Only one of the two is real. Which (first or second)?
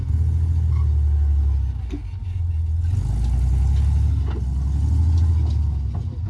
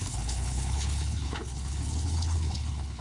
first